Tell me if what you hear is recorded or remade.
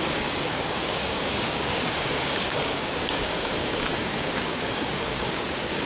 remade